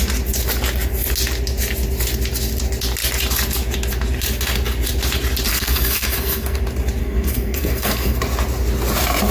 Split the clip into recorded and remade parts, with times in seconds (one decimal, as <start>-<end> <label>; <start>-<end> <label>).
0.0-5.5 recorded; 5.5-6.6 remade; 6.6-7.0 recorded; 7.0-8.2 remade; 8.2-9.3 recorded